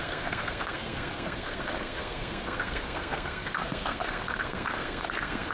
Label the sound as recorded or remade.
remade